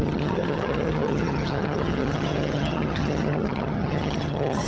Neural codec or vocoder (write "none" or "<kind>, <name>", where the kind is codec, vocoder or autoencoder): vocoder, HiFi-GAN